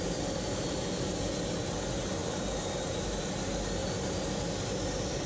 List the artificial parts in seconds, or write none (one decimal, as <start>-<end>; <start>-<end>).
none